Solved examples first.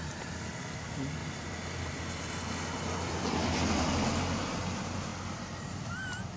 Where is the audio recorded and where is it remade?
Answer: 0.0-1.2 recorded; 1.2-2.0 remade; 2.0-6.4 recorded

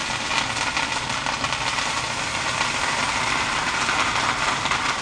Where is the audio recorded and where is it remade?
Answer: 0.0-3.0 recorded; 3.0-5.0 remade

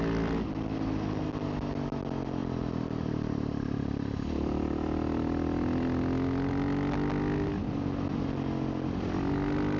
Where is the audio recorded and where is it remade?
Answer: 0.0-9.8 recorded

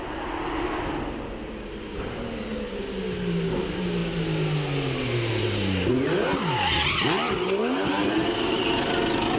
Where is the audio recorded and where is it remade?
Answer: 0.0-9.4 recorded

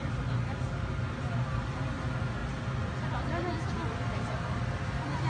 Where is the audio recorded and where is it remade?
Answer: 0.0-5.3 recorded

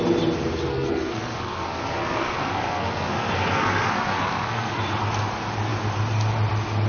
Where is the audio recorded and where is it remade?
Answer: 0.0-0.7 recorded; 0.7-4.8 remade; 4.8-6.9 recorded